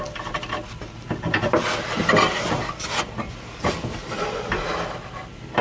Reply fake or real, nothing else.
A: real